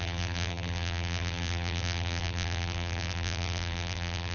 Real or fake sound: fake